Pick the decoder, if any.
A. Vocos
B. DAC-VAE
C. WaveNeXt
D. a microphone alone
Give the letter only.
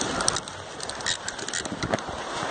D